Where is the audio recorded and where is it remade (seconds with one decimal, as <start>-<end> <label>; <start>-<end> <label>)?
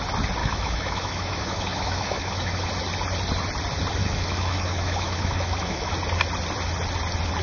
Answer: 0.0-0.4 recorded; 0.4-2.7 remade; 2.7-4.0 recorded; 4.0-5.9 remade; 5.9-7.4 recorded